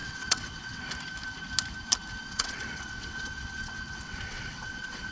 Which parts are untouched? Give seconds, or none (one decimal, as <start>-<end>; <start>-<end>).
0.8-2.2